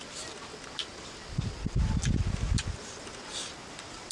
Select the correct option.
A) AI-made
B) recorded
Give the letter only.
B